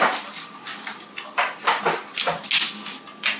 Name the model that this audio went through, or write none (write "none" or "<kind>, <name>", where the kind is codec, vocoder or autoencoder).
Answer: none